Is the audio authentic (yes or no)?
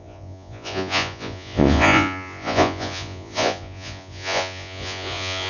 no